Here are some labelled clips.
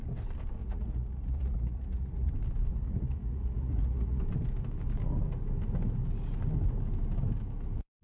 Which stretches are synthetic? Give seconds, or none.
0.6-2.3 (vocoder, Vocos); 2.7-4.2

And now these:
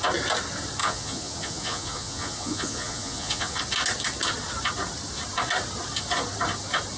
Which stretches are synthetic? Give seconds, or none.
0.8-3.6 (vocoder, Vocos)

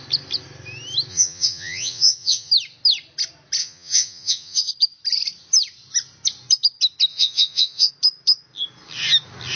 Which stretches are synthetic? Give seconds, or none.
1.1-2.5 (vocoder, Vocos); 3.6-4.7; 7.1-7.9

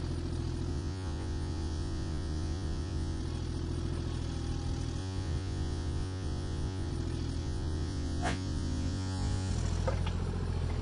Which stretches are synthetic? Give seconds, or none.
0.7-3.2 (vocoder, Vocos); 5.0-6.9; 7.4-9.5

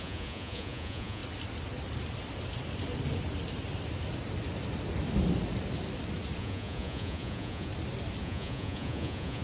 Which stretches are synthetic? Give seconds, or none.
0.0-1.2 (vocoder, Vocos); 6.4-7.7; 8.2-9.4